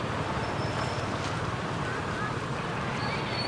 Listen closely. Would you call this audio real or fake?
real